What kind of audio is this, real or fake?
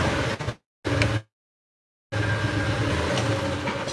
real